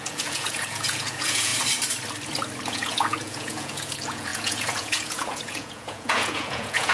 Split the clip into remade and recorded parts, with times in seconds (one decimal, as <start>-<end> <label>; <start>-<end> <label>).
0.0-1.5 remade; 1.5-2.7 recorded; 2.7-6.9 remade